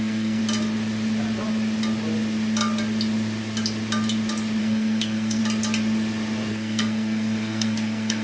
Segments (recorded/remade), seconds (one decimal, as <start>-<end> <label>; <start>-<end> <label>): 0.0-0.4 remade; 0.4-4.6 recorded; 4.6-5.4 remade; 5.4-6.5 recorded; 6.5-8.2 remade